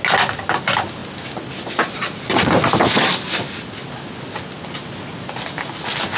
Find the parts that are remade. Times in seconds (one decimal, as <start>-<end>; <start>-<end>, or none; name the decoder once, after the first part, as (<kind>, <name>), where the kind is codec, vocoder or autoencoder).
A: none